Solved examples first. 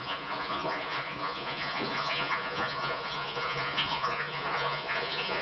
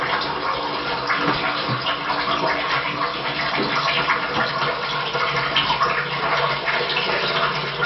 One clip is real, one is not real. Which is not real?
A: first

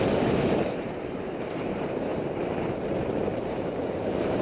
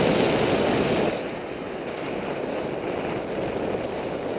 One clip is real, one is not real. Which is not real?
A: first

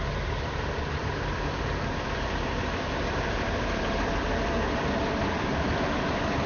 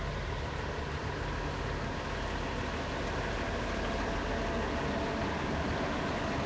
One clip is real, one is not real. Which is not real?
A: first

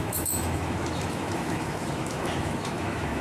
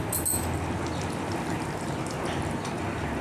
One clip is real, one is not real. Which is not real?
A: first